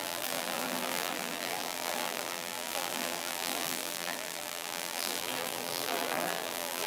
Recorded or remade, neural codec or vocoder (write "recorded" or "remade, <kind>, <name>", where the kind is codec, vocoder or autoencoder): remade, vocoder, BigVGAN v2